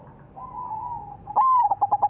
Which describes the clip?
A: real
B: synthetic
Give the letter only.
A